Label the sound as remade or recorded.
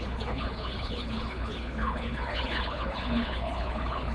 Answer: remade